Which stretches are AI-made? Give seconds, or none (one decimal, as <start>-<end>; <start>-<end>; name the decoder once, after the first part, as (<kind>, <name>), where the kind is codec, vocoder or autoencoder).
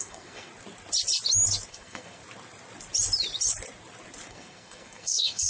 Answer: 0.0-0.5 (codec, SNAC); 1.7-2.2; 4.3-5.5